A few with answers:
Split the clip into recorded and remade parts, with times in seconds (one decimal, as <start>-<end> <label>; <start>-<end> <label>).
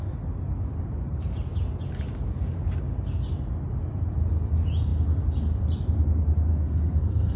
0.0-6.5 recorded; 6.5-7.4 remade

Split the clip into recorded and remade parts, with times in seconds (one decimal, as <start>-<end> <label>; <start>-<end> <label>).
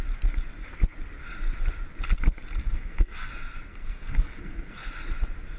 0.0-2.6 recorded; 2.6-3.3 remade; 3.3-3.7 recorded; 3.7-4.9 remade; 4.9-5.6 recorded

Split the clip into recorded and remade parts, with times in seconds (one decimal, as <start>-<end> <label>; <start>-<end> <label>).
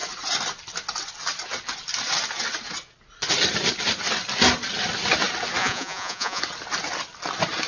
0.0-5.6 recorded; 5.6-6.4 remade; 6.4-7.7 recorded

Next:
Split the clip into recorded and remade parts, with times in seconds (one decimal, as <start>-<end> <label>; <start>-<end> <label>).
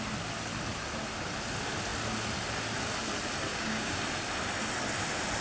0.0-3.5 recorded; 3.5-4.0 remade; 4.0-5.4 recorded